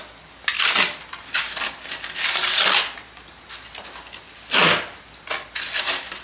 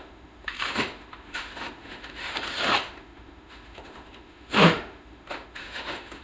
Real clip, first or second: first